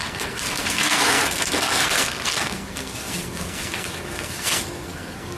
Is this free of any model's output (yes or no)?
no